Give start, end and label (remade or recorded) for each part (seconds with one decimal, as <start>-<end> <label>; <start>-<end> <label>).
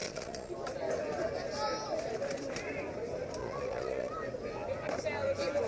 0.0-0.5 remade; 0.5-3.4 recorded; 3.4-4.1 remade; 4.1-5.7 recorded